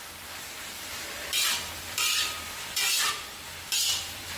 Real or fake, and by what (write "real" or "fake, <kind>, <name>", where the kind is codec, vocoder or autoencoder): fake, vocoder, BigVGAN v2